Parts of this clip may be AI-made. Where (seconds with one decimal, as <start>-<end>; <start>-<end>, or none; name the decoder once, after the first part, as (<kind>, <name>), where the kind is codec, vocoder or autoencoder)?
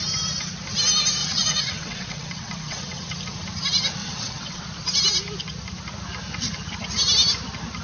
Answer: 1.2-3.2 (vocoder, WaveNeXt); 4.0-4.6